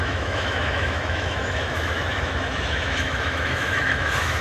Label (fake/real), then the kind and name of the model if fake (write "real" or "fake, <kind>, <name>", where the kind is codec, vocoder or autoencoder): fake, autoencoder, DAC-VAE